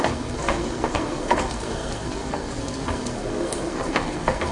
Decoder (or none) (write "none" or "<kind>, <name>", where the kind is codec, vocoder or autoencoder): codec, SNAC